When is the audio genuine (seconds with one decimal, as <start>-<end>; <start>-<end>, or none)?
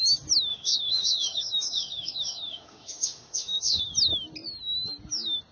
0.0-0.5; 3.8-5.5